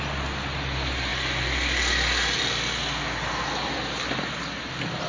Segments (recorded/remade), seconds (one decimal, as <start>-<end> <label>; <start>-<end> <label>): 0.0-5.1 recorded